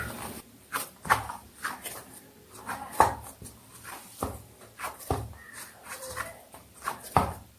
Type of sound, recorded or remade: remade